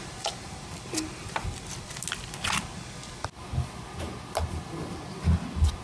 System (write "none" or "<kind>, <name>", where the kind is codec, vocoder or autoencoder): none